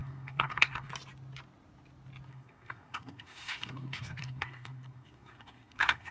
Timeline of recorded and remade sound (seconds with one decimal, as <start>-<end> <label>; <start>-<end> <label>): 0.0-0.9 remade; 0.9-2.3 recorded; 2.3-6.1 remade